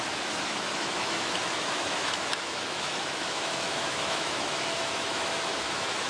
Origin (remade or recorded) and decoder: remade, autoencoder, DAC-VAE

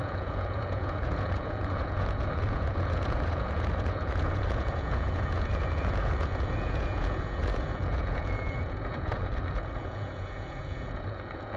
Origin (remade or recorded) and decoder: remade, vocoder, Vocos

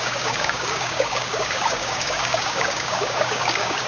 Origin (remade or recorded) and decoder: remade, codec, DAC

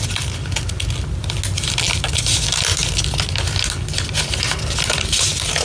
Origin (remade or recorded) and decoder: recorded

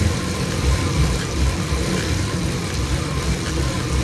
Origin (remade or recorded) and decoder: remade, vocoder, BigVGAN v2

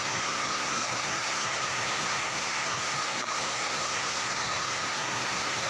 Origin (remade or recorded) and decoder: remade, codec, SNAC